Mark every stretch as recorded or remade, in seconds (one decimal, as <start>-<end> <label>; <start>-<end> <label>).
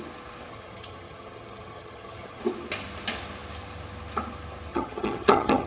0.0-0.5 recorded; 0.5-2.4 remade; 2.4-4.7 recorded; 4.7-5.7 remade